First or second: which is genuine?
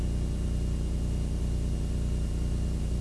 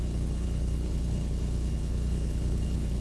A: first